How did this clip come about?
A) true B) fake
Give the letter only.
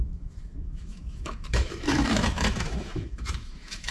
B